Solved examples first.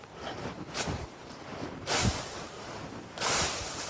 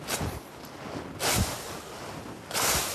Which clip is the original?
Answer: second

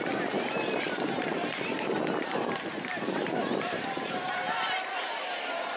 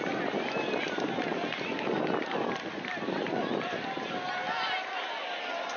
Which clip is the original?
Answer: second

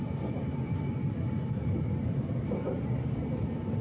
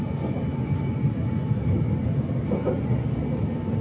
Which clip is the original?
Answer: second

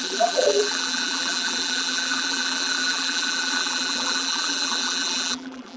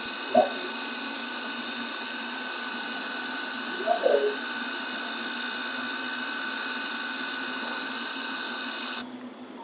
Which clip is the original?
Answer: second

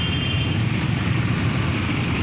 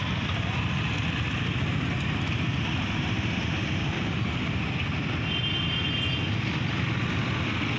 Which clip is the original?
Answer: second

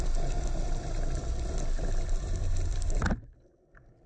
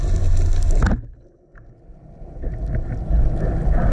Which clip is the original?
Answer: second